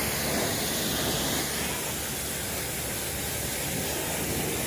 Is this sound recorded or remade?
recorded